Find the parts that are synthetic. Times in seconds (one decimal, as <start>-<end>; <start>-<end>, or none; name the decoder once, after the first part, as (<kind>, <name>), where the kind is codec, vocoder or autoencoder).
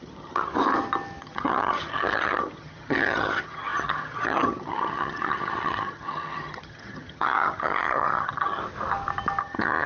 0.0-0.5 (vocoder, HiFi-GAN); 1.2-8.6; 9.4-9.9